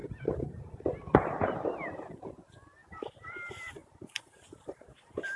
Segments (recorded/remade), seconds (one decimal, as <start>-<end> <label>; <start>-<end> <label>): 0.0-2.8 remade; 2.8-3.3 recorded; 3.3-3.8 remade; 3.8-5.4 recorded